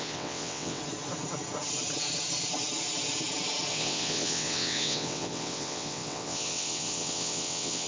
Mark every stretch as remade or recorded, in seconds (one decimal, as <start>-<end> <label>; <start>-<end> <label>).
0.0-0.8 remade; 0.8-3.7 recorded; 3.7-7.9 remade